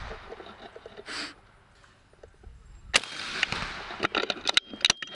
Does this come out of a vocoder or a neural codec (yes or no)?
no